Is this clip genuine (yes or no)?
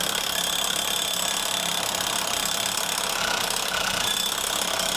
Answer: yes